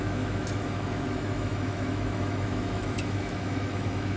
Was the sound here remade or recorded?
remade